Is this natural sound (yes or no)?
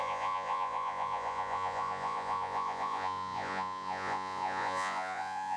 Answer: no